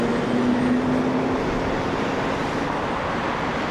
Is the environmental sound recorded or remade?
recorded